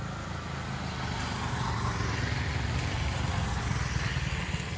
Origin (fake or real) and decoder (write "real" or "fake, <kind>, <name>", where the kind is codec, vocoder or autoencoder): real